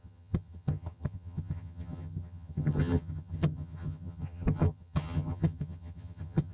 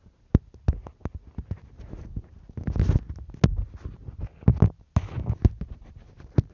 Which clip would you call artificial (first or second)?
first